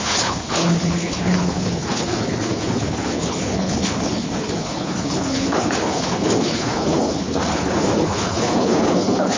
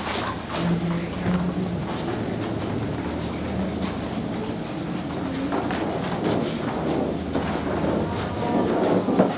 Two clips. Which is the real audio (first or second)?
second